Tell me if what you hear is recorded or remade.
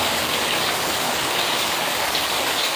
remade